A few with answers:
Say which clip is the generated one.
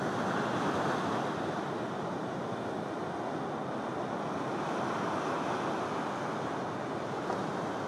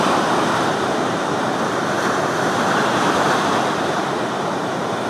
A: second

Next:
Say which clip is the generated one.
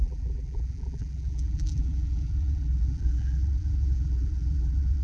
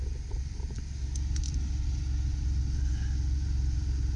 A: first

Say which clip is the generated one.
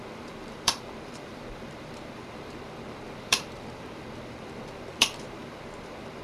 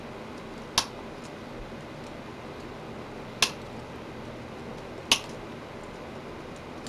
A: first